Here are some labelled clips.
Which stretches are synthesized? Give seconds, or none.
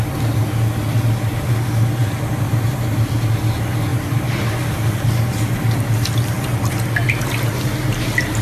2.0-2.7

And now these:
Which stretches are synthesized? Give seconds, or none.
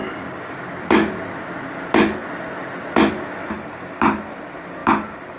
0.0-0.5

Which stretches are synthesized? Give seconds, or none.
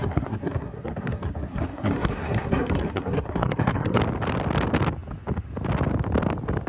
0.0-4.0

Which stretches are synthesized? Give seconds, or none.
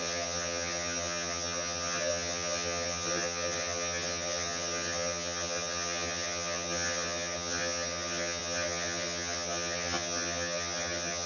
0.0-11.3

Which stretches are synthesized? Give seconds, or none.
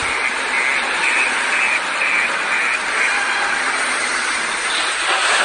0.7-3.9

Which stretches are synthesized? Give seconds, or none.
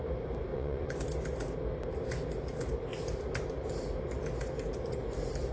0.5-1.0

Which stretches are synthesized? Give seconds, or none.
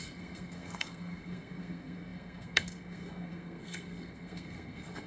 0.0-5.1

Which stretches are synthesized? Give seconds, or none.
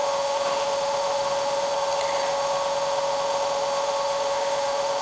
0.0-1.7; 2.2-5.0